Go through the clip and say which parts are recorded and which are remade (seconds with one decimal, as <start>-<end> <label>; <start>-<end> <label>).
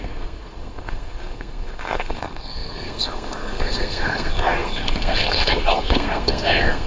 0.0-6.9 remade